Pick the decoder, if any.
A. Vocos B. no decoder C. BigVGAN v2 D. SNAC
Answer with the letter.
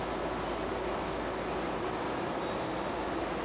B